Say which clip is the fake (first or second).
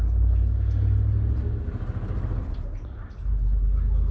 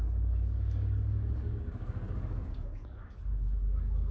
second